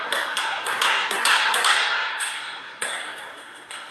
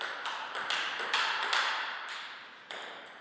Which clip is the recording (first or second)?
second